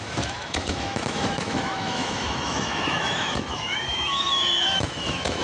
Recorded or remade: remade